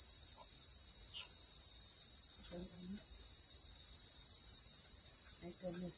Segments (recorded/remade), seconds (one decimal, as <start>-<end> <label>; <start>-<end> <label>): 0.0-2.6 recorded; 2.6-3.2 remade; 3.2-4.4 recorded; 4.4-5.4 remade; 5.4-6.0 recorded